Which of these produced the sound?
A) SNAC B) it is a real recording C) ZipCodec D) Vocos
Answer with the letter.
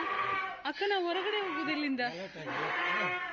B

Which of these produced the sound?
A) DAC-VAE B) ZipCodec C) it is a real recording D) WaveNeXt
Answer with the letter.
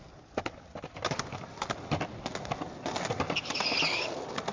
C